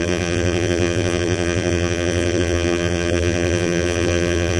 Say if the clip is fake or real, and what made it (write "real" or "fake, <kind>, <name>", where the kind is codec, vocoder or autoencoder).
fake, vocoder, BigVGAN v2